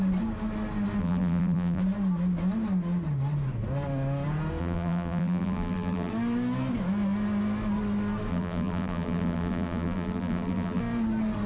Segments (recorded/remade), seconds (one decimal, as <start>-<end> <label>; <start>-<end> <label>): 0.0-1.0 recorded; 1.0-1.8 remade; 1.8-4.6 recorded; 4.6-6.1 remade; 6.1-8.3 recorded; 8.3-10.8 remade; 10.8-11.5 recorded